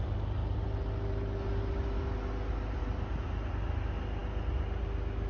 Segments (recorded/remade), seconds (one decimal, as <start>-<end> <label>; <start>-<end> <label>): 0.0-5.3 recorded